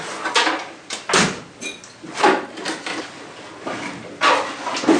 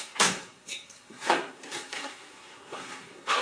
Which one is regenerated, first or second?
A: second